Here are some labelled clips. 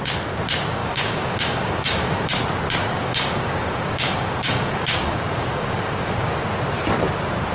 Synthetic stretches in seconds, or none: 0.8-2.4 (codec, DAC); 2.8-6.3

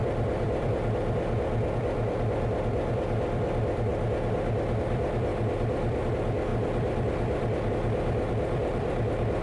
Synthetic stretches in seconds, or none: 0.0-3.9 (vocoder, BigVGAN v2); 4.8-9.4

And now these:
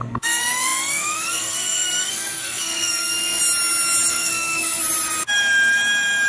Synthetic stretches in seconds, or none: 0.0-3.4 (codec, SNAC); 4.1-4.8